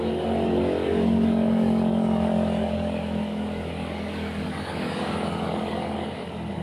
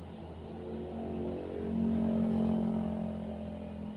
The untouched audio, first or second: second